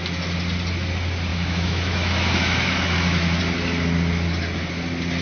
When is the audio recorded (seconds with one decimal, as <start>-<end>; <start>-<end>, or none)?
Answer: 0.0-1.3; 3.4-5.2